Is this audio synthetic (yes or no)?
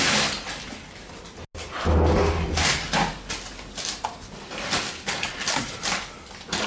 no